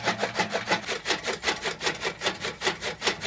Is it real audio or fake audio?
real